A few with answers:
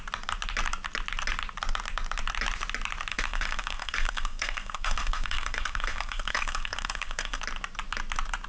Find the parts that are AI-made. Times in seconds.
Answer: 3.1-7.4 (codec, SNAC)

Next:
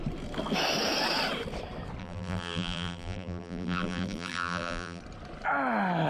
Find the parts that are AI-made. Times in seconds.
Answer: 2.0-5.0 (vocoder, BigVGAN v2)